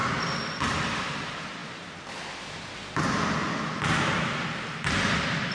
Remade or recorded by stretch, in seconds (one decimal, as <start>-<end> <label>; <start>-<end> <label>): 0.0-5.5 recorded